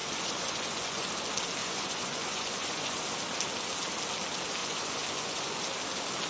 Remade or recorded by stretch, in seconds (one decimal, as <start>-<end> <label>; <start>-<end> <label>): 0.0-1.1 remade; 1.1-1.6 recorded; 1.6-3.0 remade; 3.0-4.6 recorded; 4.6-5.6 remade; 5.6-6.3 recorded